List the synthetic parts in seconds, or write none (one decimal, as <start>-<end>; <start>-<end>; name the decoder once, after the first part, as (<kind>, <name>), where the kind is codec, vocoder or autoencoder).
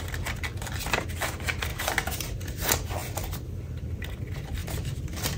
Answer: 1.7-2.4 (vocoder, BigVGAN v2); 3.0-3.5; 4.6-5.4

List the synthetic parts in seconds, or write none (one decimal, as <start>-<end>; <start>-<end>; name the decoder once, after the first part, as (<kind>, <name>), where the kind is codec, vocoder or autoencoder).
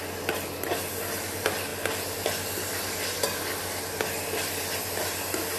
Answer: none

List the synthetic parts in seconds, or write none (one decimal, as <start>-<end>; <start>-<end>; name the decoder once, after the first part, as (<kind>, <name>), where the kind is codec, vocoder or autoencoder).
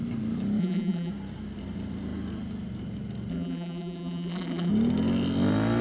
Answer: 0.6-1.1 (vocoder, BigVGAN v2); 3.3-4.7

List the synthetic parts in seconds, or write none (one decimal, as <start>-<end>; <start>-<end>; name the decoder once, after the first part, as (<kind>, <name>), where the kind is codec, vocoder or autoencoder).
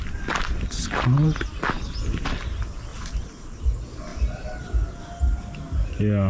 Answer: 2.9-3.6 (vocoder, BigVGAN v2)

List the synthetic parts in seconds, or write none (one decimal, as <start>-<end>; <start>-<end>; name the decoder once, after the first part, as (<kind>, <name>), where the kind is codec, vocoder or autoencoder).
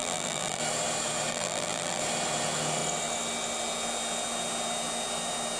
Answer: 0.0-0.6 (vocoder, BigVGAN v2); 1.3-2.0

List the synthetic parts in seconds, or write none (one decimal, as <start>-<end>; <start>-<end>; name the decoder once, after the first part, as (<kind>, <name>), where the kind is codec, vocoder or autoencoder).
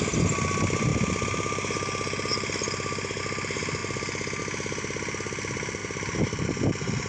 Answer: 0.9-3.2 (vocoder, BigVGAN v2); 5.8-7.1